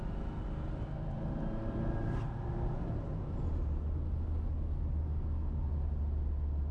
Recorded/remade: recorded